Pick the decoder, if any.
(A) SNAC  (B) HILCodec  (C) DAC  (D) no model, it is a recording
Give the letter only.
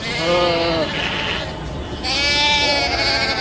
D